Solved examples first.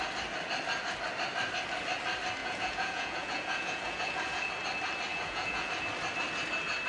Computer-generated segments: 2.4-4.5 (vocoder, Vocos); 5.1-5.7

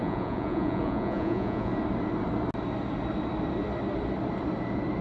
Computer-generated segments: 0.0-1.7 (vocoder, Vocos)

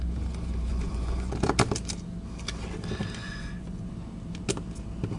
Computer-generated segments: 0.7-1.3 (vocoder, Vocos); 3.2-3.9